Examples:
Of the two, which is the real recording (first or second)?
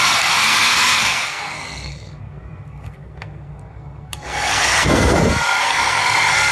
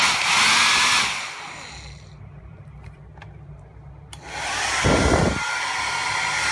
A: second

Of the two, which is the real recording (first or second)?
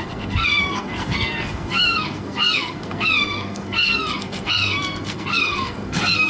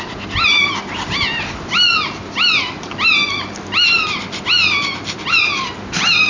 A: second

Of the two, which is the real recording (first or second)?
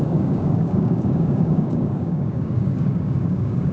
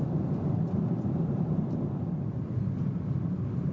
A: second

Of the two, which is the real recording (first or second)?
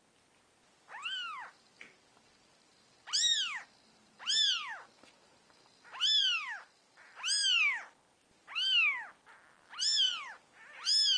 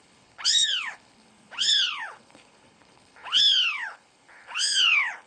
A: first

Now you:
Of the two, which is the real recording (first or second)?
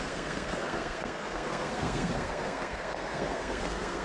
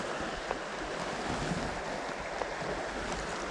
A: second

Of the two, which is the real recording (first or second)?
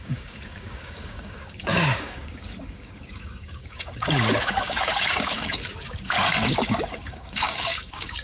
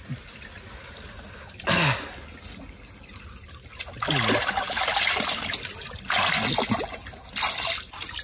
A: second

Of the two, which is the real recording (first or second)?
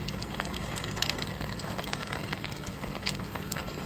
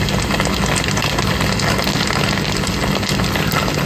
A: second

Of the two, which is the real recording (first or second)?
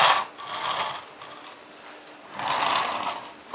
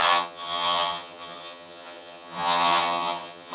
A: first